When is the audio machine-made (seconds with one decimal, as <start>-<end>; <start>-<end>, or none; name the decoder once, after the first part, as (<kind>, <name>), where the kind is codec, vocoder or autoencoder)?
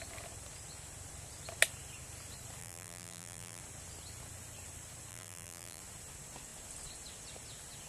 2.6-3.6 (vocoder, BigVGAN v2); 5.1-5.8